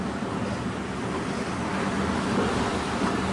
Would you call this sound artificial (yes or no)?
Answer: no